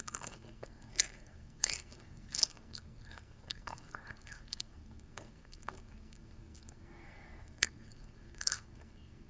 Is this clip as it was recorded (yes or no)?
no